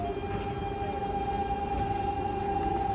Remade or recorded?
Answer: recorded